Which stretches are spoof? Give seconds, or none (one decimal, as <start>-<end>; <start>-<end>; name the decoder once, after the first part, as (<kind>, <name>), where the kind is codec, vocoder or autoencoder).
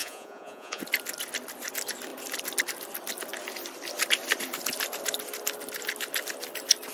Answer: 0.0-0.8 (vocoder, Vocos)